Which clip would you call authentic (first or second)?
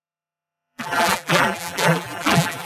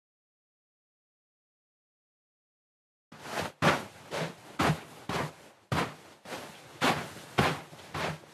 second